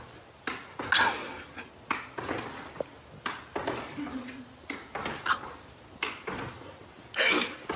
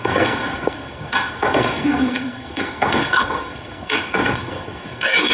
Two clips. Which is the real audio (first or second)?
first